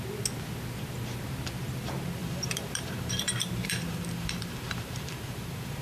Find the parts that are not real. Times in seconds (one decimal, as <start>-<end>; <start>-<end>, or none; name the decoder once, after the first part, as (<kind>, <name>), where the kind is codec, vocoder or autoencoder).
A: 2.2-5.8 (vocoder, BigVGAN v2)